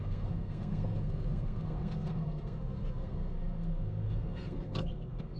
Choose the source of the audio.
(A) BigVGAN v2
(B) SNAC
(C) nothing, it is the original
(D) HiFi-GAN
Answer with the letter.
B